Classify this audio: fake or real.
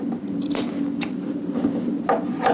real